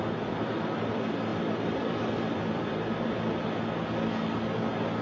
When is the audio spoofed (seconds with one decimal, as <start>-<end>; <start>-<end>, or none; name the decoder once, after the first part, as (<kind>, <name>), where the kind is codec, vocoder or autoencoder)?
1.3-3.1 (vocoder, BigVGAN v2)